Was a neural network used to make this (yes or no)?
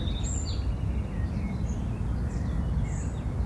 no